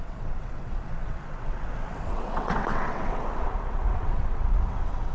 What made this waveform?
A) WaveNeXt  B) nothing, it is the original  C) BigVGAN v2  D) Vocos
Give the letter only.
A